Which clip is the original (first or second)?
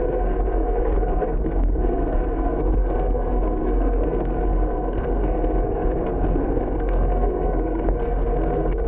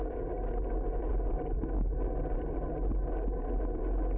second